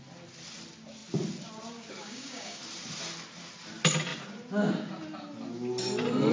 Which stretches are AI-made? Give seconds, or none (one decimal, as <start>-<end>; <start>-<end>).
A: 2.0-2.6